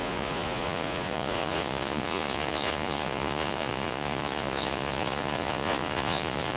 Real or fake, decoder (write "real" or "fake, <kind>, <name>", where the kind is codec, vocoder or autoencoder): fake, vocoder, Vocos